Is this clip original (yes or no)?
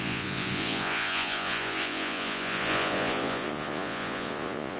no